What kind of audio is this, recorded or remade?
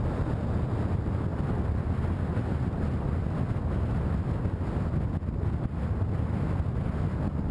recorded